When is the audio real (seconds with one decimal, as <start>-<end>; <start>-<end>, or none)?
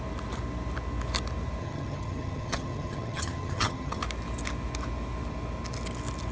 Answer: 0.0-1.6; 4.0-6.3